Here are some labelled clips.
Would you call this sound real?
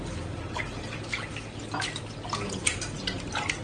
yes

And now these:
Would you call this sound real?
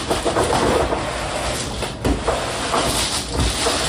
yes